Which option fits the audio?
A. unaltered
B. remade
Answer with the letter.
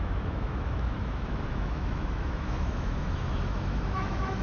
B